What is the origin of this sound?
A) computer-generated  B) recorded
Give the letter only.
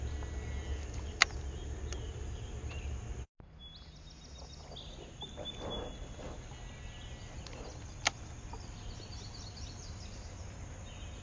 B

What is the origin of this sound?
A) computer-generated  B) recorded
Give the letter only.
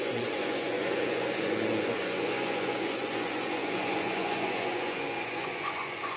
A